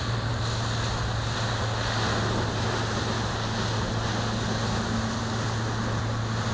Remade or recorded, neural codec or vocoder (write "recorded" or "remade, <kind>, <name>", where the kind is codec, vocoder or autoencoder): recorded